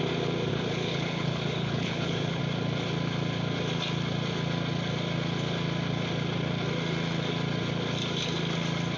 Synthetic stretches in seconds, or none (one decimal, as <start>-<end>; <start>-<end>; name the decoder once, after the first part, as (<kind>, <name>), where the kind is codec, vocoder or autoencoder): 0.5-2.4 (codec, HILCodec)